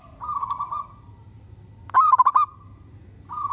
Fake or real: real